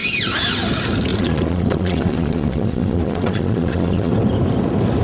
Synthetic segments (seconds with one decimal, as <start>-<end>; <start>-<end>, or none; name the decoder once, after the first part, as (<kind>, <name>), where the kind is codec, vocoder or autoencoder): 1.1-4.1 (vocoder, Vocos)